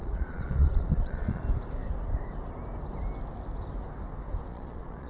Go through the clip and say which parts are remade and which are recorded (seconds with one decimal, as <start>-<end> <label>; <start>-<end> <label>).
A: 0.0-1.4 remade; 1.4-4.5 recorded; 4.5-5.1 remade